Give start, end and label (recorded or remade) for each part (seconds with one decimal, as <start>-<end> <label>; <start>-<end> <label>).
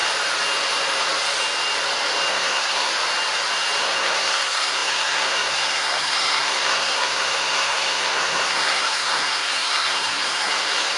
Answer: 0.0-2.3 recorded; 2.3-2.9 remade; 2.9-3.8 recorded; 3.8-11.0 remade